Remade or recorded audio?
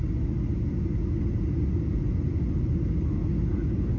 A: recorded